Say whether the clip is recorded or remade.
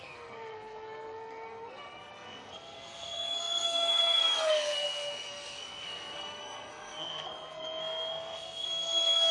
remade